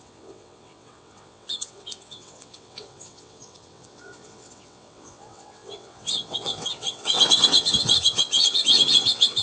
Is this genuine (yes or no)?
no